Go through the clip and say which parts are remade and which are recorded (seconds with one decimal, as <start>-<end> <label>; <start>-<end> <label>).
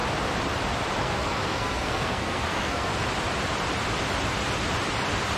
0.0-1.0 recorded; 1.0-2.9 remade; 2.9-5.4 recorded